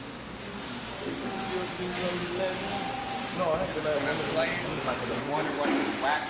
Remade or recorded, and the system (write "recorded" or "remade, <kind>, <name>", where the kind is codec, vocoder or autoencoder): recorded